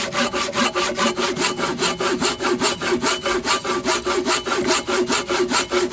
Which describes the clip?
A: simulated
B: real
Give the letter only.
B